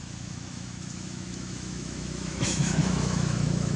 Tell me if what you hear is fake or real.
fake